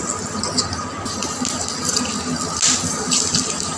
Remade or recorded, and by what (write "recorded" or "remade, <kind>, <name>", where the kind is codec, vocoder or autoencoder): recorded